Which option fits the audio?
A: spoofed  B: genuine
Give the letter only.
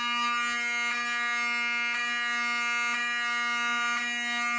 B